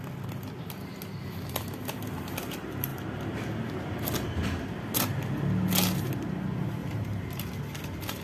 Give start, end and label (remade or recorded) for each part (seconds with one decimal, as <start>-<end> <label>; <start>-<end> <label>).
0.0-6.8 recorded; 6.8-7.4 remade; 7.4-8.2 recorded